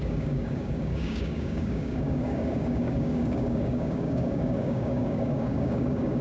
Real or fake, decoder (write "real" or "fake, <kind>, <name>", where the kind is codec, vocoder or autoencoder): fake, codec, DAC